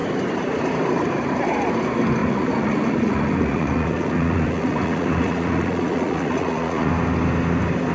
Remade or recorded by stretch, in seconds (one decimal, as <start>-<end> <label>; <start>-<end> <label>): 0.0-2.2 recorded; 2.2-6.9 remade; 6.9-7.9 recorded